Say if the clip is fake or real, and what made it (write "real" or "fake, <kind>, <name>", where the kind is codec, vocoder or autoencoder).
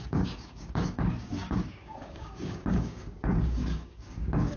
fake, codec, DAC